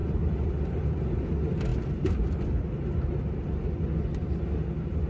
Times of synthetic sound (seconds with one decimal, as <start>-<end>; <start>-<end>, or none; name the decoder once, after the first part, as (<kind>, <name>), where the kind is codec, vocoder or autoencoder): none